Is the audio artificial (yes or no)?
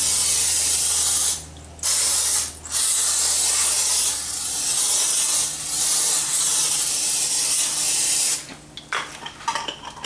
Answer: no